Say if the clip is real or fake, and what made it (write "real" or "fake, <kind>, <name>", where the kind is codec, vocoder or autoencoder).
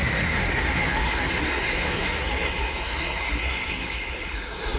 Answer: fake, codec, SNAC